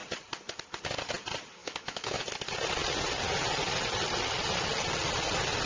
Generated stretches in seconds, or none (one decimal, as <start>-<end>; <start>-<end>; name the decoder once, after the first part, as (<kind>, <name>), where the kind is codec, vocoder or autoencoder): 1.6-2.2 (autoencoder, DAC-VAE)